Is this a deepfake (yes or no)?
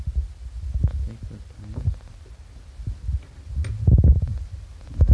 no